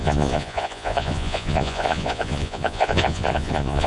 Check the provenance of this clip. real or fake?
fake